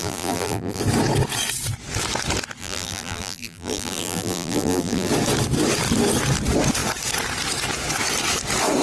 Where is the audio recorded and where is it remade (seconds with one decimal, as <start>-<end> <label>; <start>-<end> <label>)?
0.0-0.8 remade; 0.8-2.6 recorded; 2.6-5.1 remade; 5.1-8.8 recorded